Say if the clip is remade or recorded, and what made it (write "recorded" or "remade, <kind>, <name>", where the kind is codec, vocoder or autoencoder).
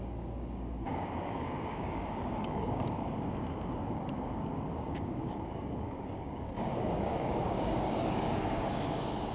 remade, codec, DAC